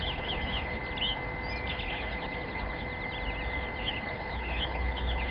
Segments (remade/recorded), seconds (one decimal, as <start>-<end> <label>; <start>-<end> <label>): 0.0-0.8 remade; 0.8-1.7 recorded; 1.7-2.9 remade; 2.9-3.8 recorded; 3.8-5.3 remade